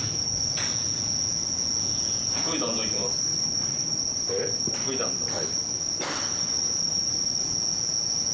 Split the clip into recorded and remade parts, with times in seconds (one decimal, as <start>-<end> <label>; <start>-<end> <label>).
0.0-3.0 remade; 3.0-7.4 recorded; 7.4-8.3 remade